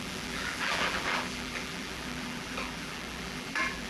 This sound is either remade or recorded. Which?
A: remade